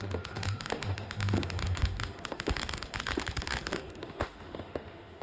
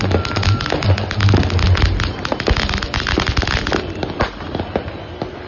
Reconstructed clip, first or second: first